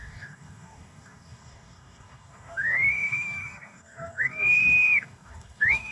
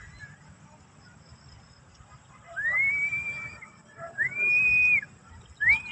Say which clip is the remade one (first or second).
first